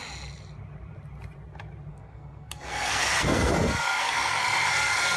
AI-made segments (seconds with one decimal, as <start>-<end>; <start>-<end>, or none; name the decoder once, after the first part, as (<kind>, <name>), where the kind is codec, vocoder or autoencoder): 1.9-5.2 (codec, SNAC)